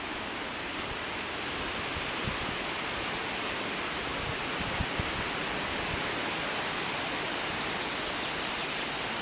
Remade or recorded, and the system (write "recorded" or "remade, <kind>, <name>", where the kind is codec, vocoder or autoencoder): recorded